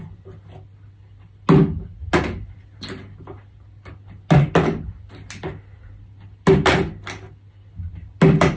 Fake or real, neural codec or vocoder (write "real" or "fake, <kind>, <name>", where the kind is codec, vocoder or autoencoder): real